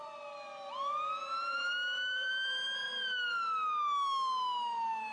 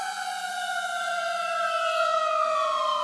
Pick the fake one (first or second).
second